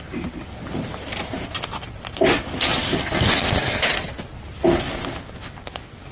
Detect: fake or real real